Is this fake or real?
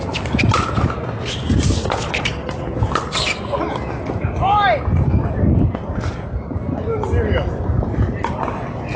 real